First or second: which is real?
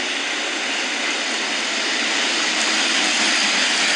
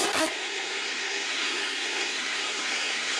first